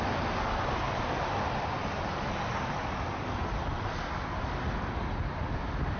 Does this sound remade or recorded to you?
recorded